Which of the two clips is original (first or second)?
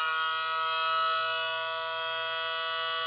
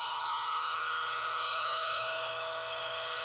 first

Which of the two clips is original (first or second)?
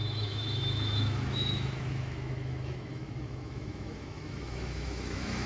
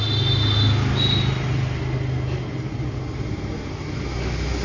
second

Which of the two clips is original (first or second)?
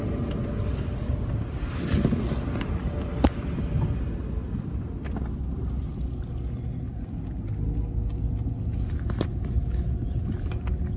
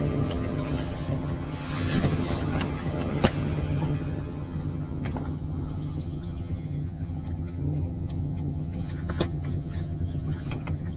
first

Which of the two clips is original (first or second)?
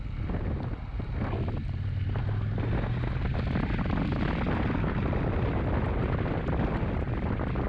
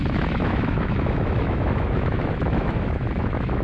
first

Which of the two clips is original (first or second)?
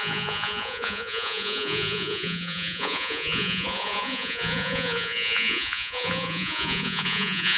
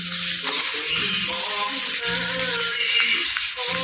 second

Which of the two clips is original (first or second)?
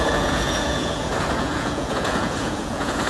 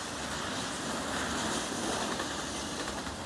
second